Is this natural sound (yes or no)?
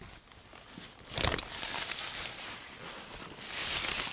yes